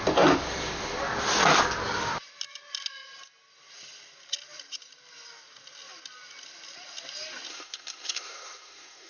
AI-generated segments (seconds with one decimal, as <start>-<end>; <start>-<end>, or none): 7.5-9.1